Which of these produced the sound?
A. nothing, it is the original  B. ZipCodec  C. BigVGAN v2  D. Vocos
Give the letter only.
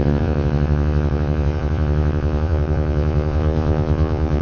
D